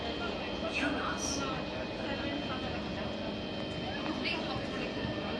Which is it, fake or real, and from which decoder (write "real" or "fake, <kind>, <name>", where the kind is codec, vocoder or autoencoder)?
real